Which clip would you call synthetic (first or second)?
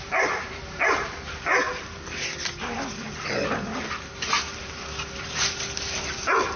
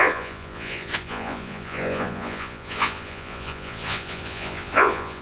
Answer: second